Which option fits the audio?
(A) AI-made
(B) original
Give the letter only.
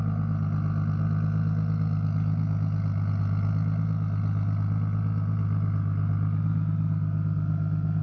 B